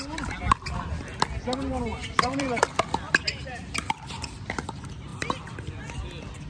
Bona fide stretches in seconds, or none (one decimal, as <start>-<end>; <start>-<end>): 0.0-1.9; 4.5-5.1; 5.8-6.5